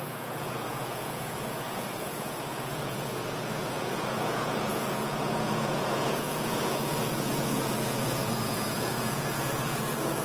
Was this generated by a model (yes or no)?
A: yes